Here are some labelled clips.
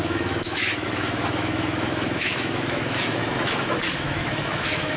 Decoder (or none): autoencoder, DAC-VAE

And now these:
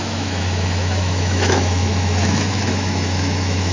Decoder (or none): autoencoder, DAC-VAE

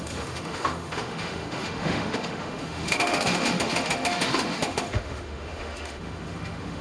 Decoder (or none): autoencoder, DAC-VAE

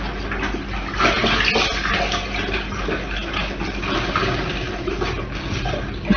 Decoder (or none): none